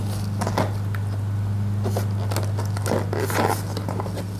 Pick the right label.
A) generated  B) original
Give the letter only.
B